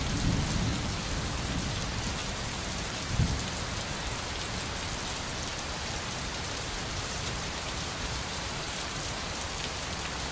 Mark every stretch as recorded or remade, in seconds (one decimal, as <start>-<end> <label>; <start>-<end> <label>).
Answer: 0.0-2.2 recorded; 2.2-3.6 remade; 3.6-5.5 recorded; 5.5-9.8 remade; 9.8-10.3 recorded